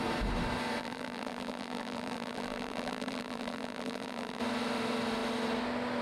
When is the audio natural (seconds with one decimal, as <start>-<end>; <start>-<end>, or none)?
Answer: 0.0-0.8; 4.4-6.0